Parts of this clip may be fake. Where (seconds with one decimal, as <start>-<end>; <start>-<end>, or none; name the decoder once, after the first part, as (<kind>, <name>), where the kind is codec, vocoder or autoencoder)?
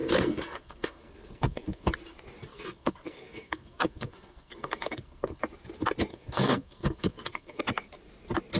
0.0-1.9 (codec, SNAC); 2.5-5.4; 6.1-7.6